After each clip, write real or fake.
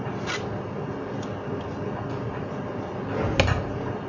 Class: real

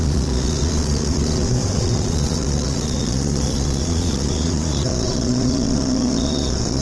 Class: fake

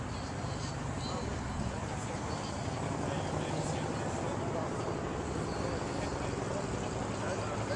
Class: real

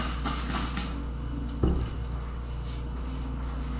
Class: real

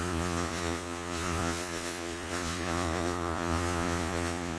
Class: fake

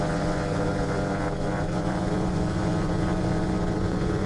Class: fake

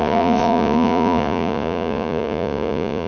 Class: fake